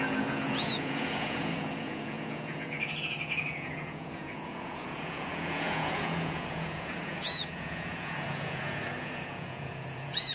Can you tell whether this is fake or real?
fake